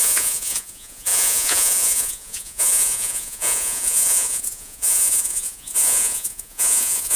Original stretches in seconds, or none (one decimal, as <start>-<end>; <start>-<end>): none